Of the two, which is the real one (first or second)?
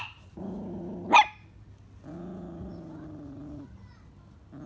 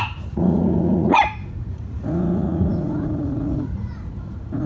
first